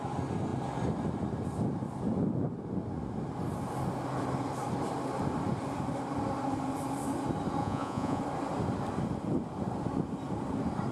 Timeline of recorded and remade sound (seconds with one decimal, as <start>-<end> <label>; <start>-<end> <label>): 0.0-7.6 recorded; 7.6-8.2 remade; 8.2-10.9 recorded